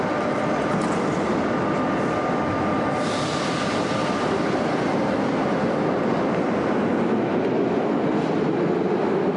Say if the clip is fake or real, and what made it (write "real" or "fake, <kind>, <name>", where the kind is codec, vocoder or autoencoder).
real